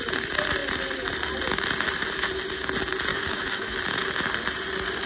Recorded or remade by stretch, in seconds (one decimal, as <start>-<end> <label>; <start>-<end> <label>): 0.0-3.1 recorded; 3.1-3.8 remade; 3.8-5.1 recorded